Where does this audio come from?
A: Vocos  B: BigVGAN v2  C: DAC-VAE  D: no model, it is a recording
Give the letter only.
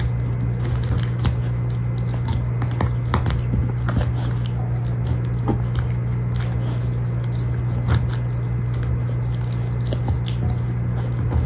D